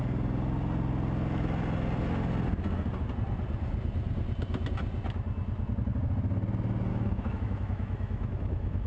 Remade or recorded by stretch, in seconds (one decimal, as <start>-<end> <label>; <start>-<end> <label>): 0.0-6.9 recorded; 6.9-8.9 remade